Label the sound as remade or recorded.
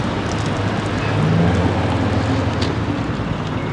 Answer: recorded